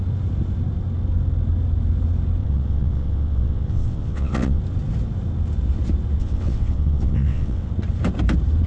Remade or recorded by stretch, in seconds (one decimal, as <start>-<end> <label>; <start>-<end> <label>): 0.0-2.4 recorded; 2.4-4.6 remade; 4.6-6.2 recorded; 6.2-7.7 remade; 7.7-8.7 recorded